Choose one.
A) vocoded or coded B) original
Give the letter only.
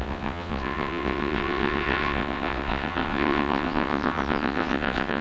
A